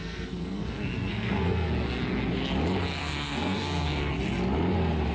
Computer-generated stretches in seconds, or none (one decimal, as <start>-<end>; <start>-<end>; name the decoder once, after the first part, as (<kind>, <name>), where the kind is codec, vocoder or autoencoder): 0.0-1.7 (codec, SNAC); 3.0-4.1